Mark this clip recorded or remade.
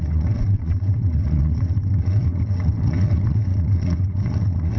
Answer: remade